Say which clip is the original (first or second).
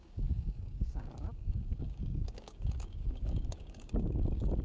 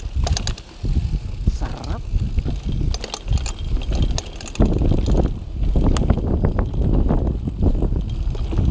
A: second